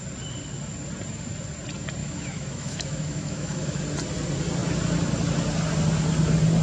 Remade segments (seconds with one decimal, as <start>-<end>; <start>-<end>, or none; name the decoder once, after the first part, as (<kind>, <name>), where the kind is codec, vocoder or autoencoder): 2.0-3.8 (autoencoder, DAC-VAE)